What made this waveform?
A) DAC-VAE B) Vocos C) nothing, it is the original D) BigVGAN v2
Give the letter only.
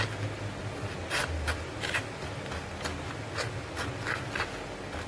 C